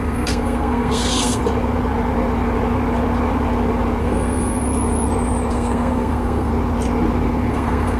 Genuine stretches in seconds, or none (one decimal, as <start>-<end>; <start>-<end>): 1.4-4.0; 4.6-5.5; 6.5-7.5